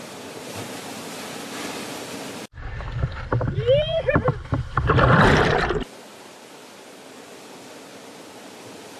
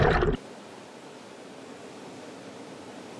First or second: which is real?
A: second